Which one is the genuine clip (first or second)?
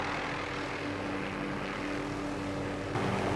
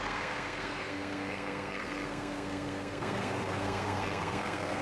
first